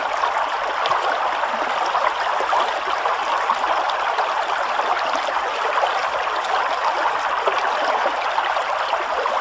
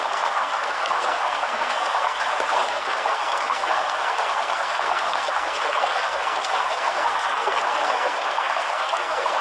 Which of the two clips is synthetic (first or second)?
second